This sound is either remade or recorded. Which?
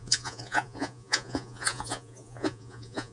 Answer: remade